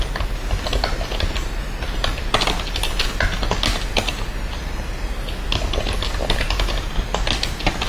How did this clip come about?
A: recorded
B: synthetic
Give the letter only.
A